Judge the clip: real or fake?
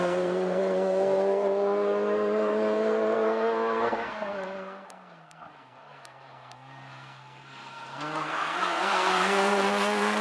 fake